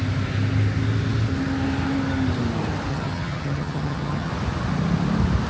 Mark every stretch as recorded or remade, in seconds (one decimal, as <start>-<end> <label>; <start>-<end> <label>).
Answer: 0.0-2.9 recorded; 2.9-4.3 remade; 4.3-5.5 recorded